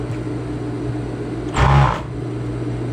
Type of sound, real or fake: real